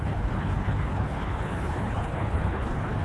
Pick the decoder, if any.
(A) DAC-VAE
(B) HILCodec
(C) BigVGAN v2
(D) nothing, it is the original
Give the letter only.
B